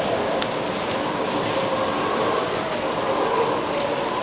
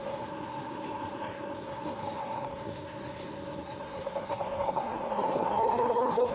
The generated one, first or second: second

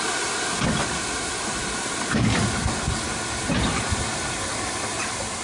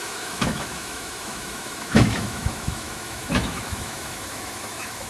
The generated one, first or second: second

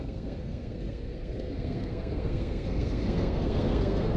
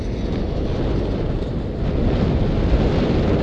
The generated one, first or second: first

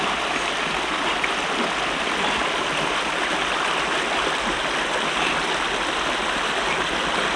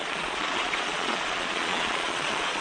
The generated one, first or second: second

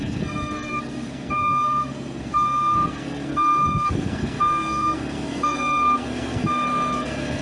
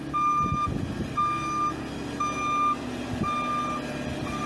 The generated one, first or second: first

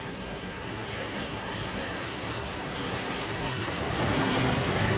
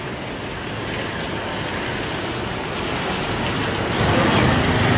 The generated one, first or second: first